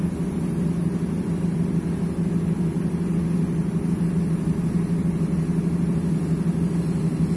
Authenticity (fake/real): real